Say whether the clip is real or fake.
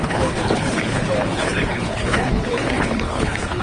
fake